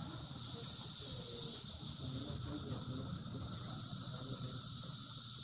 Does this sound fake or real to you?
real